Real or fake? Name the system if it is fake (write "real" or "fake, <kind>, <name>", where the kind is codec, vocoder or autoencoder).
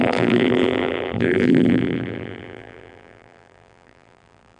fake, vocoder, BigVGAN v2